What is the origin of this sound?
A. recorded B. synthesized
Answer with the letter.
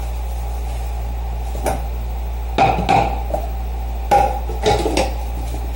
A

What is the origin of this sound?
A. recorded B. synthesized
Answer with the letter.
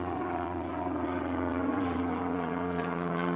B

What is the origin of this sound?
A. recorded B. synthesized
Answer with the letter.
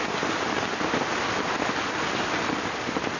A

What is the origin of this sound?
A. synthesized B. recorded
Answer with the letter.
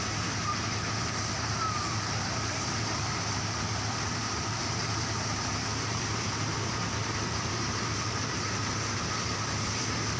A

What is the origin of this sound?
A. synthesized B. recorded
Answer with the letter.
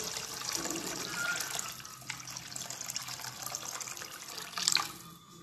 B